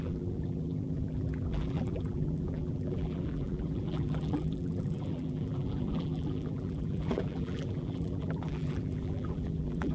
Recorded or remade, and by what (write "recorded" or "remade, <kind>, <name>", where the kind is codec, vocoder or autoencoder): remade, vocoder, BigVGAN v2